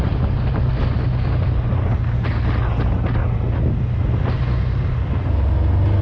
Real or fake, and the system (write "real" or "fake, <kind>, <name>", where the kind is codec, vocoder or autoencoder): real